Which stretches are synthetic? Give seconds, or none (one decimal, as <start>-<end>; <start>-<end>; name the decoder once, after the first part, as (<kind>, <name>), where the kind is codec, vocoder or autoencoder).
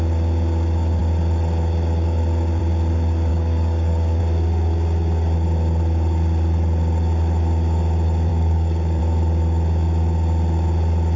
3.3-4.2 (codec, DAC); 8.3-9.0